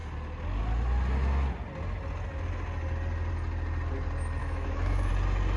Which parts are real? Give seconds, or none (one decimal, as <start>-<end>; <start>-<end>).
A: 0.0-4.4; 5.1-5.6